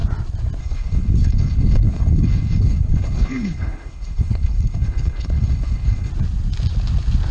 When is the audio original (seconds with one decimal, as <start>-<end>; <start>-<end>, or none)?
0.0-0.6; 6.1-7.3